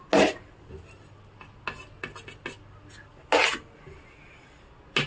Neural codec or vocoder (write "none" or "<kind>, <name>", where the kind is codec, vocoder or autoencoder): none